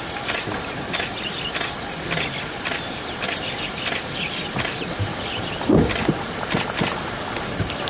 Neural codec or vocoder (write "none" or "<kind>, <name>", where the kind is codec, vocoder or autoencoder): none